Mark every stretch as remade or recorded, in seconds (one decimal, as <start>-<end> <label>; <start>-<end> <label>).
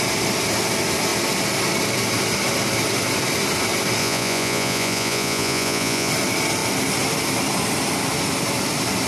0.0-4.0 recorded; 4.0-6.1 remade; 6.1-9.1 recorded